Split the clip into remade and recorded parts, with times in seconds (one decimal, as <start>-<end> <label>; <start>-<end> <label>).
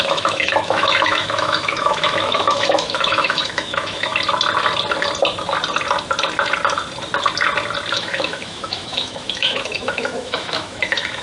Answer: 0.0-4.1 remade; 4.1-7.9 recorded; 7.9-11.2 remade